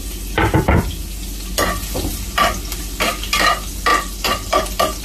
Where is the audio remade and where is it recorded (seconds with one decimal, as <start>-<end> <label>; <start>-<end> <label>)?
0.0-3.9 recorded; 3.9-5.0 remade

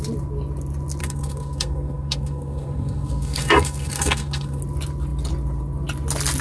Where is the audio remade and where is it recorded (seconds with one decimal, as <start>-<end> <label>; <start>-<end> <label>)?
0.0-1.0 recorded; 1.0-4.6 remade; 4.6-6.4 recorded

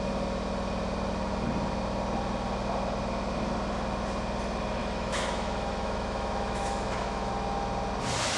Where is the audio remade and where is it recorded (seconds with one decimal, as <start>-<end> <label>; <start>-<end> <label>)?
0.0-4.8 recorded; 4.8-7.3 remade; 7.3-8.4 recorded

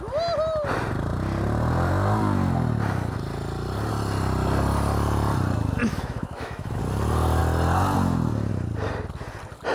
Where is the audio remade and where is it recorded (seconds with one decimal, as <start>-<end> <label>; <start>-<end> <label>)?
0.0-5.8 recorded; 5.8-6.8 remade; 6.8-9.7 recorded

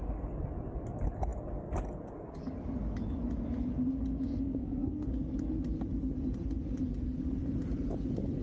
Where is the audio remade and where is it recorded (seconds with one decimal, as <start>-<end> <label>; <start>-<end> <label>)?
0.0-4.6 recorded; 4.6-5.1 remade; 5.1-8.4 recorded

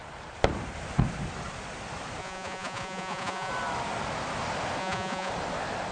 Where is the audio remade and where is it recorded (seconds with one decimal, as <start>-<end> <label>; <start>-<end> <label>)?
0.0-2.2 recorded; 2.2-3.5 remade; 3.5-4.8 recorded; 4.8-5.3 remade; 5.3-5.9 recorded

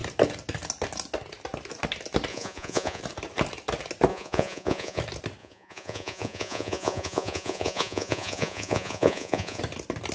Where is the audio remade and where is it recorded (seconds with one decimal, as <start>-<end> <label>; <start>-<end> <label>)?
0.0-2.3 recorded; 2.3-3.0 remade; 3.0-4.1 recorded; 4.1-5.0 remade; 5.0-5.4 recorded; 5.4-9.6 remade; 9.6-10.1 recorded

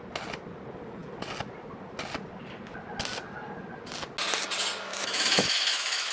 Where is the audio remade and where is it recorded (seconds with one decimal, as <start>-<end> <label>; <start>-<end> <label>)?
0.0-4.9 recorded; 4.9-6.1 remade